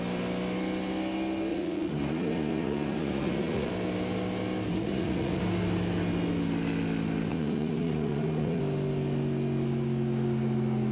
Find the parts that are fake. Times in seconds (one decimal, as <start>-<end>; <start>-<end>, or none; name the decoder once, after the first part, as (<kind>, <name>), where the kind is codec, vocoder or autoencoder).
1.5-3.7 (vocoder, Vocos); 4.8-5.4; 7.3-8.6